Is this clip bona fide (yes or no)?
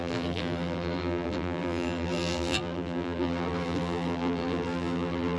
no